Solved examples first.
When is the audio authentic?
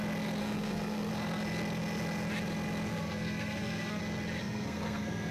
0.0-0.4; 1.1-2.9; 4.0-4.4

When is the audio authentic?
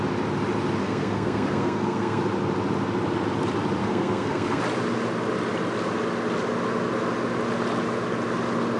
0.0-0.8; 2.2-3.8; 4.6-8.8